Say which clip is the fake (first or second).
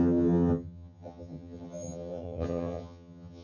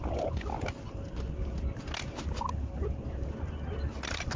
first